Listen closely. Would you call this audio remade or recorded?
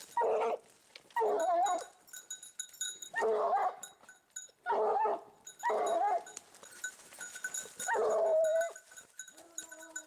recorded